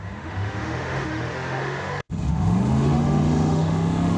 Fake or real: fake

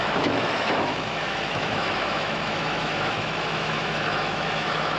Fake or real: fake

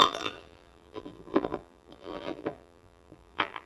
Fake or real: fake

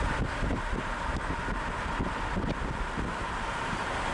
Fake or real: real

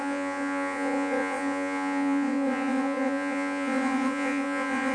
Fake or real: fake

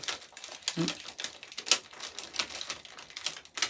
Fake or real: real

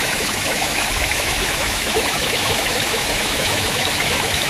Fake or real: fake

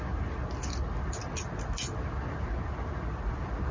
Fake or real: real